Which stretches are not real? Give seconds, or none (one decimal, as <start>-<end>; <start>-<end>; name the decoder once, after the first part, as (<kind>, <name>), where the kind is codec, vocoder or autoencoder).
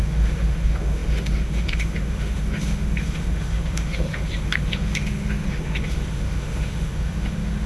0.0-7.7 (autoencoder, DAC-VAE)